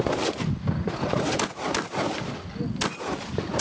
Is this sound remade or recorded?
recorded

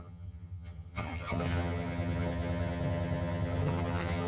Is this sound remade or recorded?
remade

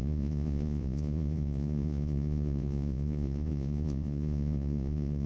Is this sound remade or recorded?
remade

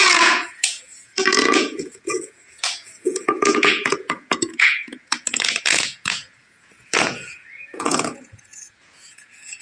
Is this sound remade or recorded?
remade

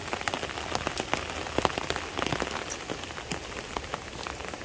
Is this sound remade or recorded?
recorded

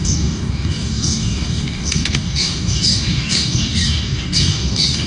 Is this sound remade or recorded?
remade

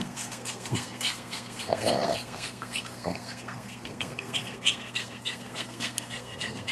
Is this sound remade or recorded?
remade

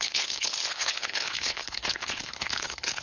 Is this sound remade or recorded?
remade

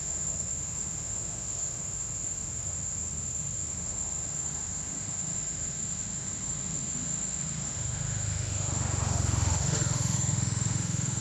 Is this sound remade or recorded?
remade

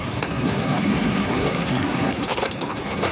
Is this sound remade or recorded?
remade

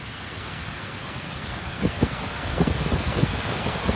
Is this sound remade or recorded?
remade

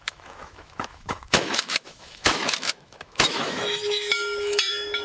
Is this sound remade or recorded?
remade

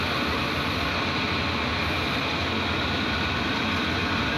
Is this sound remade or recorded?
recorded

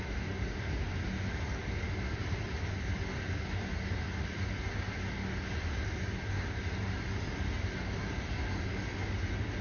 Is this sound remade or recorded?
recorded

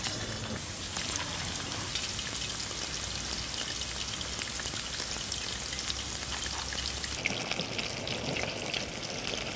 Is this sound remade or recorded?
recorded